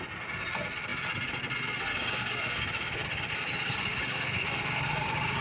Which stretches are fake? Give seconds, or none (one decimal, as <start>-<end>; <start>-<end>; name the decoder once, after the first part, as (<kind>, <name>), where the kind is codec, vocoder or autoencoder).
1.9-5.4 (codec, DAC)

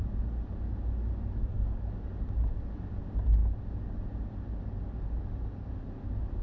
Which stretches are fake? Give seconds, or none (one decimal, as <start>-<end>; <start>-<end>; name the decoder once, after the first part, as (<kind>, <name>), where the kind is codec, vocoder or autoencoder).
1.5-2.1 (codec, DAC)